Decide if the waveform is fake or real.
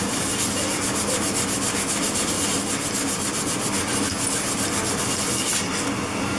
real